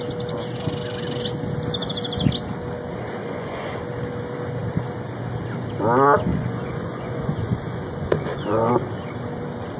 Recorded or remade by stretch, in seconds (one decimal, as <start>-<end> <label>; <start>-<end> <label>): 0.0-3.2 recorded; 3.2-3.8 remade; 3.8-6.3 recorded; 6.3-8.7 remade; 8.7-9.8 recorded